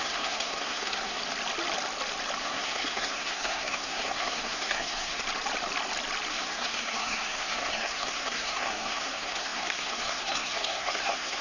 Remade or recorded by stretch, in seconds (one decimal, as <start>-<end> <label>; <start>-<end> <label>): 0.0-1.2 remade; 1.2-2.4 recorded; 2.4-5.2 remade; 5.2-6.3 recorded; 6.3-11.4 remade

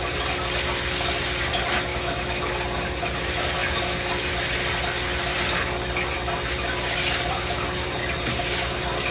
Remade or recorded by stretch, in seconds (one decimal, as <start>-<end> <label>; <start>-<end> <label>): 0.0-1.9 recorded; 1.9-2.5 remade; 2.5-9.1 recorded

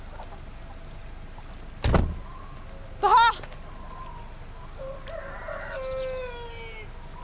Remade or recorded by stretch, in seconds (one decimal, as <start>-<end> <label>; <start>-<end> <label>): 0.0-7.2 recorded

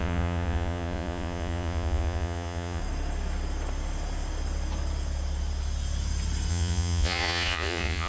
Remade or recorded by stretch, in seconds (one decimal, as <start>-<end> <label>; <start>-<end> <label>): 0.0-2.8 remade; 2.8-6.5 recorded; 6.5-8.1 remade

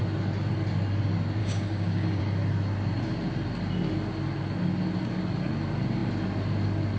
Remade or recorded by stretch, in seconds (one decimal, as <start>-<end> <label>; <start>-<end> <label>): 0.0-1.4 recorded; 1.4-2.2 remade; 2.2-7.0 recorded

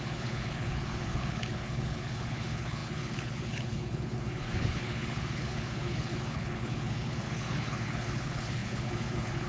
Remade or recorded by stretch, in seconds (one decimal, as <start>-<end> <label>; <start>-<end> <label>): 0.0-9.5 remade

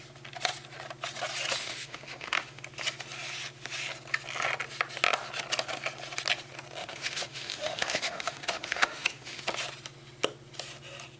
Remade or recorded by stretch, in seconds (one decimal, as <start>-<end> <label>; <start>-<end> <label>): 0.0-1.6 recorded; 1.6-2.6 remade; 2.6-6.8 recorded; 6.8-9.4 remade; 9.4-11.2 recorded